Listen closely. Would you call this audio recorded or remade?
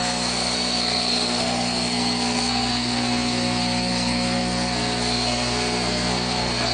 remade